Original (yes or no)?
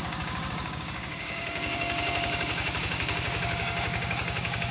no